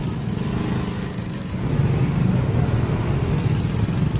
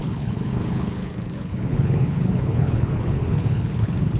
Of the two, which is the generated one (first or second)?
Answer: second